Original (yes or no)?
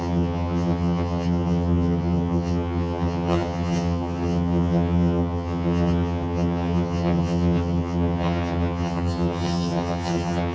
no